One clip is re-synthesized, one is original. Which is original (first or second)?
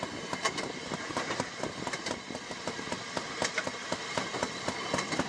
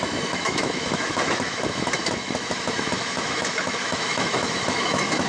first